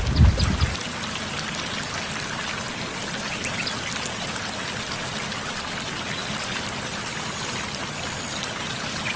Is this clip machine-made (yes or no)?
no